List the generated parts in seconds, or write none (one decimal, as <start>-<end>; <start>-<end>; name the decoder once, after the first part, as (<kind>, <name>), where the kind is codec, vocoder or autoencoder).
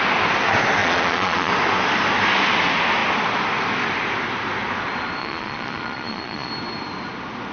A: 0.8-1.5 (vocoder, Vocos); 5.2-6.5